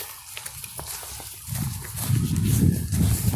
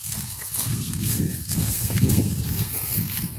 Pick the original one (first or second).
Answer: first